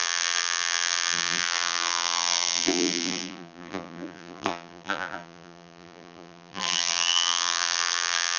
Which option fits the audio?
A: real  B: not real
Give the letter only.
B